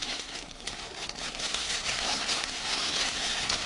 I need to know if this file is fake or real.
fake